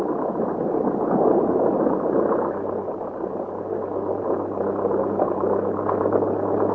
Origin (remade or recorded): recorded